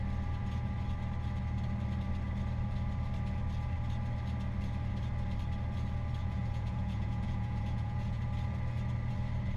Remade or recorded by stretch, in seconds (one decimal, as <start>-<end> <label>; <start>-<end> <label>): 0.0-6.2 recorded; 6.2-8.2 remade; 8.2-9.6 recorded